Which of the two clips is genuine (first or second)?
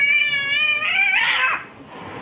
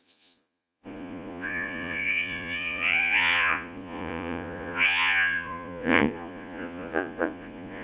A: first